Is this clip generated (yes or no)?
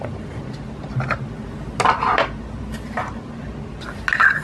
no